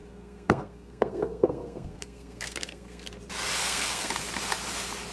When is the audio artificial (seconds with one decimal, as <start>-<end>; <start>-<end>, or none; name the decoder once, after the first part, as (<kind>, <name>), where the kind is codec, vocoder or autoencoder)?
0.0-3.1 (codec, SNAC); 3.6-4.1